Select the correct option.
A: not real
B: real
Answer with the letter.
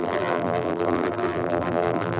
A